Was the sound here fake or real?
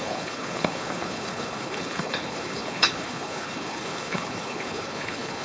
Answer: fake